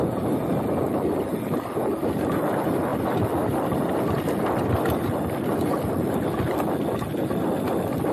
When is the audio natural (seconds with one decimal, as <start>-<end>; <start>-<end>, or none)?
0.0-8.1